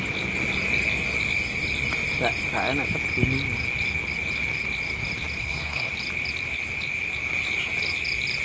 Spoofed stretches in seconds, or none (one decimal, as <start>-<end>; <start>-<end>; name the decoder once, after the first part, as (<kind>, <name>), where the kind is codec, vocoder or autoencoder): 5.4-5.9 (codec, SNAC)